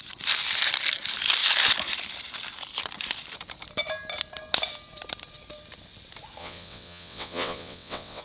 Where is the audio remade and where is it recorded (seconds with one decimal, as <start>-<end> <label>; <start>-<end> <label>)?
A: 0.0-6.4 recorded; 6.4-8.2 remade